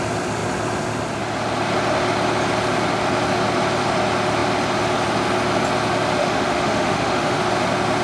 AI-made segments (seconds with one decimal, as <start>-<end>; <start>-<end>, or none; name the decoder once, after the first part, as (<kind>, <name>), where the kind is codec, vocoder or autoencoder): 6.2-7.4 (autoencoder, DAC-VAE)